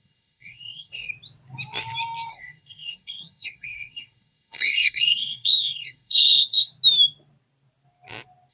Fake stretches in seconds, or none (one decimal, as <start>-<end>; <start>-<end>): 0.0-1.1; 2.3-6.7